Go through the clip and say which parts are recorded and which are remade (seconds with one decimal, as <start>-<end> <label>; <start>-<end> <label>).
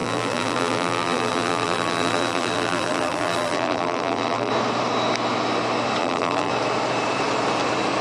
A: 0.0-4.5 remade; 4.5-6.0 recorded; 6.0-6.5 remade; 6.5-8.0 recorded